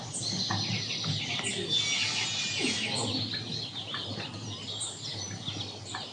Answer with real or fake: real